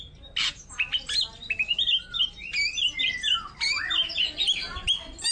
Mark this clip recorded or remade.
recorded